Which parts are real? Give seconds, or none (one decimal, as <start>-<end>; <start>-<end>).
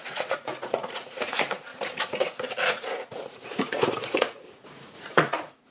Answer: 1.7-2.7